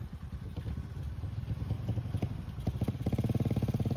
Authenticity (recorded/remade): recorded